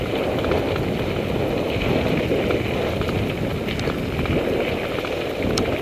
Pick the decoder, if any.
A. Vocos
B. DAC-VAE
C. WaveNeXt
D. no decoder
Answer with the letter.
D